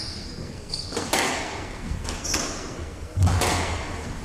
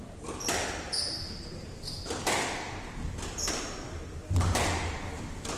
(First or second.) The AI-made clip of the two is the first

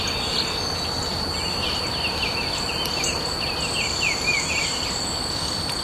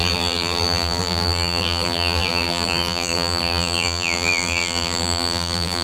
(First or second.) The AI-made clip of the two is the second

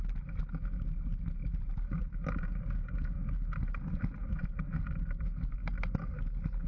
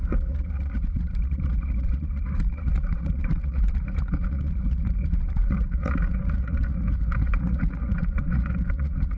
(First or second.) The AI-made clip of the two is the second